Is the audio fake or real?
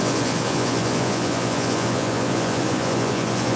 fake